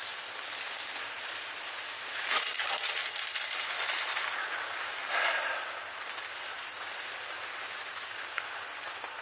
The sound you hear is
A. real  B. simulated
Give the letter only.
A